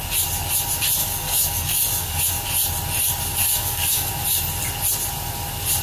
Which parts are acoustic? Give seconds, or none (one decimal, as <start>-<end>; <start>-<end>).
0.0-1.0; 2.3-3.4; 4.1-5.8